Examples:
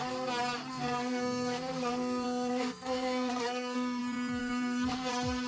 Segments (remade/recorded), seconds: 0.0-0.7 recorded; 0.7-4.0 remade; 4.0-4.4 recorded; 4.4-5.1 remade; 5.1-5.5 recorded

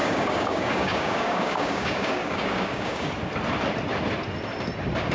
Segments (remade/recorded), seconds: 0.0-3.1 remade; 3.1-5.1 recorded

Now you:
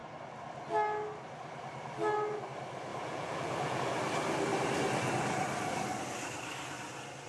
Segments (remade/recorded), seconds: 0.0-2.9 recorded; 2.9-3.8 remade; 3.8-7.3 recorded

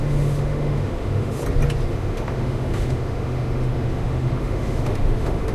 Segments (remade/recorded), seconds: 0.0-1.4 remade; 1.4-1.9 recorded; 1.9-5.5 remade

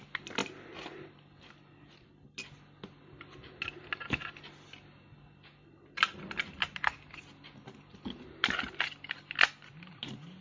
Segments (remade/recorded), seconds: 0.0-10.4 recorded